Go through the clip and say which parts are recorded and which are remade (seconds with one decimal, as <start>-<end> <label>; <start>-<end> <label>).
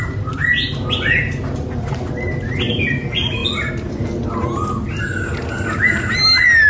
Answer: 0.0-6.7 recorded